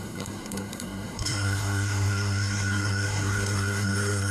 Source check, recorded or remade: remade